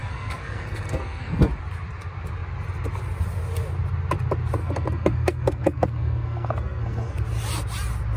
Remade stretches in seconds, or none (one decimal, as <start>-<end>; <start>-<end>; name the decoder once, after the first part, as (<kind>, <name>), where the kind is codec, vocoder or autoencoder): 0.0-1.5 (codec, SNAC); 4.6-7.2